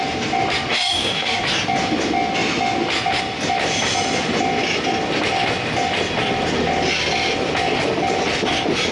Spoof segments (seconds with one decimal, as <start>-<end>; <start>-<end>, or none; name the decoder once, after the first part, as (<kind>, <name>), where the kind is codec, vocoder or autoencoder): 0.7-1.4 (codec, DAC)